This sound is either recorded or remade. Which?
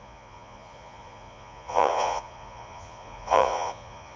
remade